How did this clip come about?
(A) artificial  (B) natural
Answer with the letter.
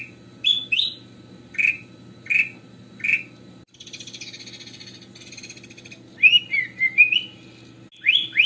B